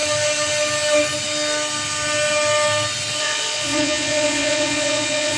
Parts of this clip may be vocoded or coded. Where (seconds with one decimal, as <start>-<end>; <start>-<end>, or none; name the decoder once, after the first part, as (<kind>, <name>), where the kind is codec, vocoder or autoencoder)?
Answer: 3.2-5.4 (vocoder, Vocos)